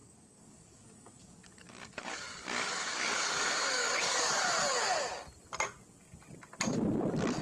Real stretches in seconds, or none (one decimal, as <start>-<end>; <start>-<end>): 4.4-7.4

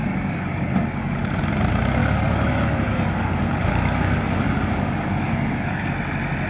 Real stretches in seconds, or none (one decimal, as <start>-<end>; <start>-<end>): 1.3-2.0; 5.9-6.5

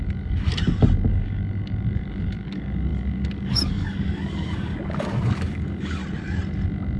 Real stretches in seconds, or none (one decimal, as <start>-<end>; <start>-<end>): 0.5-1.1; 6.0-7.0

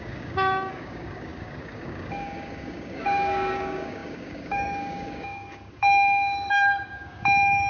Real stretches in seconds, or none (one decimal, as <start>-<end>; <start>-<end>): none

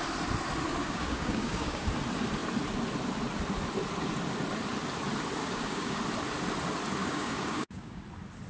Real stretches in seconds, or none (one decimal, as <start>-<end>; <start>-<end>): 0.0-0.8; 1.9-5.4; 6.0-7.0; 8.0-8.5

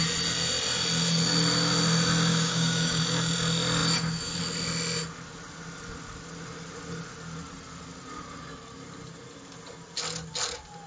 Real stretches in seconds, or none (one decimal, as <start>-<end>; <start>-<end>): 0.0-2.3; 3.0-10.9